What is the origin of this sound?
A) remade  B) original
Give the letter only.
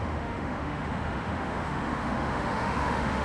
A